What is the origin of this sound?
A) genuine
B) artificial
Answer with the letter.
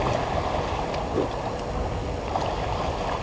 A